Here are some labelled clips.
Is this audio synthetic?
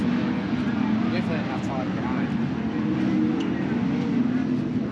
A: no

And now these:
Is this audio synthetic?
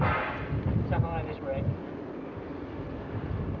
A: no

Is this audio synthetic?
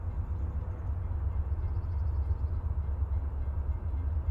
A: no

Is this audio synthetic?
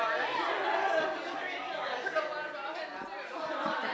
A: no